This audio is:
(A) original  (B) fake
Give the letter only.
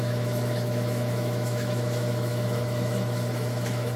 B